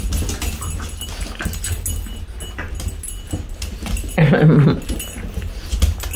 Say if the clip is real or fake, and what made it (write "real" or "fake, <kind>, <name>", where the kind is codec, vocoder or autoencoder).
real